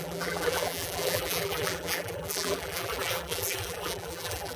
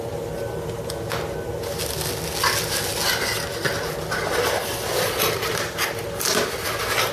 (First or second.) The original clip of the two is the second